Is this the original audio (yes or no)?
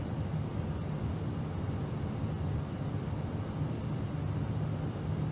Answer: yes